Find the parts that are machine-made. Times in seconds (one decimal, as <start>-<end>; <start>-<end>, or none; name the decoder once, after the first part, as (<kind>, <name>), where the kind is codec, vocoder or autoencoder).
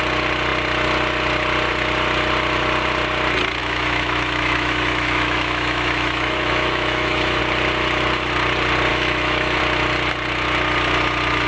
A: 3.6-7.4 (autoencoder, DAC-VAE); 8.9-9.6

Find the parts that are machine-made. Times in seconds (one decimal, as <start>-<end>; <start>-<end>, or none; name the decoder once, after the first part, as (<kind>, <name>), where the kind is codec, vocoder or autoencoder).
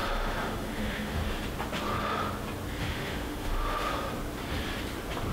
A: 0.0-1.2 (autoencoder, DAC-VAE); 2.8-3.9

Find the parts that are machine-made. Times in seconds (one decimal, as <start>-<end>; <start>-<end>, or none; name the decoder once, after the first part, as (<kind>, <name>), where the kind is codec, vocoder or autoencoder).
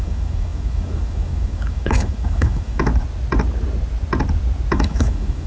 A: 0.0-2.9 (autoencoder, DAC-VAE); 4.7-5.5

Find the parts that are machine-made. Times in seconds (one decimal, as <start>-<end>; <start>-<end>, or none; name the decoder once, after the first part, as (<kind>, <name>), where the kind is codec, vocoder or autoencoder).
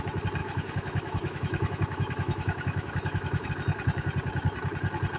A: 0.4-3.5 (autoencoder, DAC-VAE)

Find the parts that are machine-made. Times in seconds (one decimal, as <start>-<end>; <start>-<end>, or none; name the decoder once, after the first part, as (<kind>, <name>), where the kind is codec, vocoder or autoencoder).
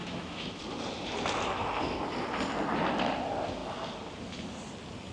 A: 0.0-0.6 (autoencoder, DAC-VAE)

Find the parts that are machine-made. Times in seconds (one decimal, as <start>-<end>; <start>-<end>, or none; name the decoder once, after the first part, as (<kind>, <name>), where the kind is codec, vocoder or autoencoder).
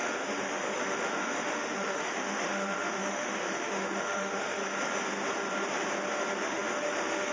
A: 0.0-4.6 (autoencoder, DAC-VAE); 6.4-7.3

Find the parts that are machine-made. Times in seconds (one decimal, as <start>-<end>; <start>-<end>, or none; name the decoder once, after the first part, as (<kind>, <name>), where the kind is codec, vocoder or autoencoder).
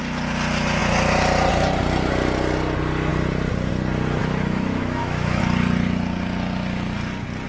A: 4.2-5.4 (autoencoder, DAC-VAE)